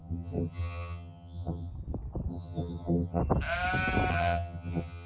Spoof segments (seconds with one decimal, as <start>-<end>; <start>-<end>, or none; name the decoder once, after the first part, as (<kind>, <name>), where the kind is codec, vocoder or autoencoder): 0.0-1.7 (vocoder, HiFi-GAN); 2.3-3.2; 4.1-5.1